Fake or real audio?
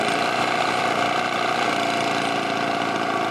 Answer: real